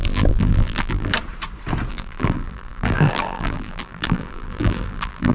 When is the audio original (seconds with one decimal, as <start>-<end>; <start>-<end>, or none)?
1.1-1.9